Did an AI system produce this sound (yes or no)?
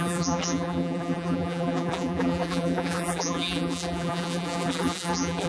yes